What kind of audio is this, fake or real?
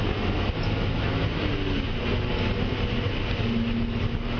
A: real